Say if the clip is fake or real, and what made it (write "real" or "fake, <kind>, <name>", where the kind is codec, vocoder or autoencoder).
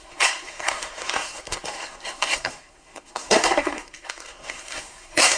fake, codec, SNAC